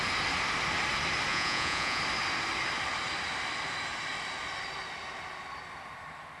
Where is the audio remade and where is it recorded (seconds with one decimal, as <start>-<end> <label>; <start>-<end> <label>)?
0.0-1.3 recorded; 1.3-2.0 remade; 2.0-6.4 recorded